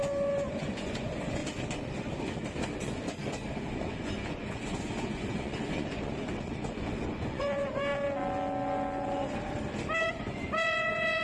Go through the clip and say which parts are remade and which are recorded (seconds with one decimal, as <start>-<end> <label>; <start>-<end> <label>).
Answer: 0.0-1.4 remade; 1.4-2.8 recorded; 2.8-7.9 remade; 7.9-10.0 recorded; 10.0-11.2 remade